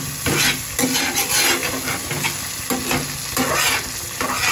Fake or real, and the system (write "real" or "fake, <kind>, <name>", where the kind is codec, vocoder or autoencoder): real